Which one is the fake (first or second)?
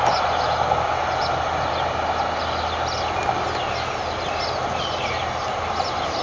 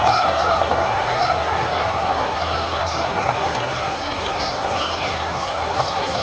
second